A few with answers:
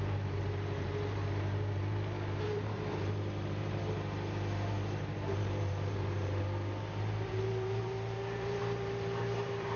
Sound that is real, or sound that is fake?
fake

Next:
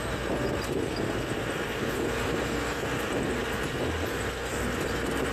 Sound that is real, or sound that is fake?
real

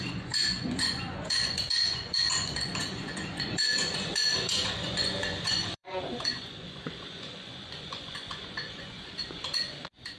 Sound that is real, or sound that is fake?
fake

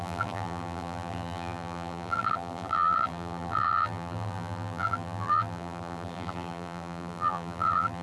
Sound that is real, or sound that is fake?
fake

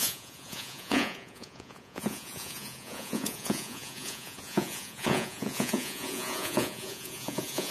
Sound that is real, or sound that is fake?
fake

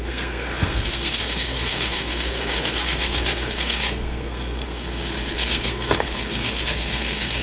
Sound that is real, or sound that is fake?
fake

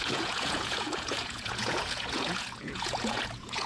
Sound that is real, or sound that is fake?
fake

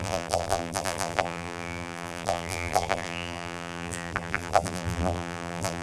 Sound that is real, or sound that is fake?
fake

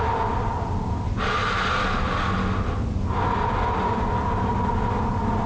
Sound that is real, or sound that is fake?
real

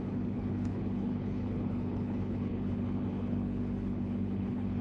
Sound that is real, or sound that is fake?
fake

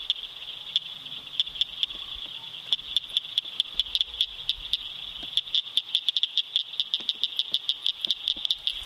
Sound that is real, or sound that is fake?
real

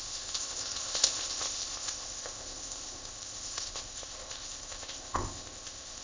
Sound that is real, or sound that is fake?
fake